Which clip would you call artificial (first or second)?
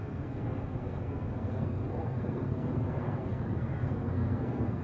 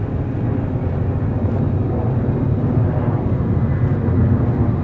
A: first